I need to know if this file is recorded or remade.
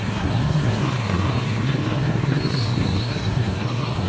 remade